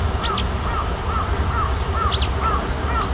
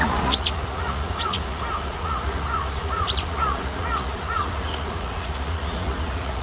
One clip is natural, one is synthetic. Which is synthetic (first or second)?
second